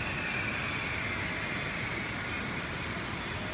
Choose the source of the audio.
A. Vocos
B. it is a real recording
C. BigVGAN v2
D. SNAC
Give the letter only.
B